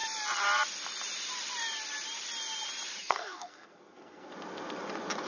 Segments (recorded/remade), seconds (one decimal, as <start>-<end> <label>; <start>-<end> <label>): 0.0-3.0 recorded; 3.0-4.3 remade; 4.3-5.3 recorded